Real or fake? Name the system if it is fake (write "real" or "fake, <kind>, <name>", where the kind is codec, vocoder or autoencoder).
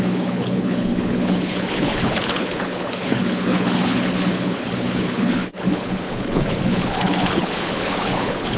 fake, codec, HILCodec